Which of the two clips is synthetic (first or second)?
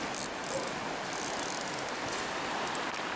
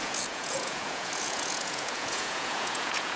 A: second